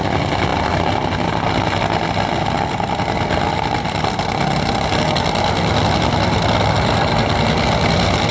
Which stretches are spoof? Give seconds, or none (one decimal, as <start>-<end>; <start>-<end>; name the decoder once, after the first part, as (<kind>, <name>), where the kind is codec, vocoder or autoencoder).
none